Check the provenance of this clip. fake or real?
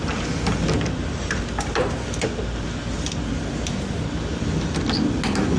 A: real